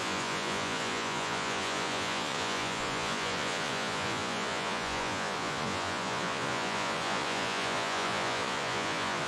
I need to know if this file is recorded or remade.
remade